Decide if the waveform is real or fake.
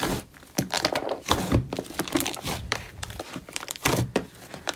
fake